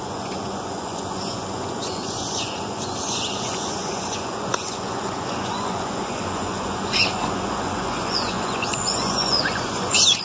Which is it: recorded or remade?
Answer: remade